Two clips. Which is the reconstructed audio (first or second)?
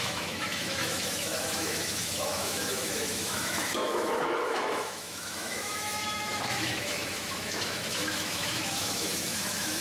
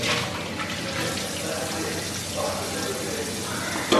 first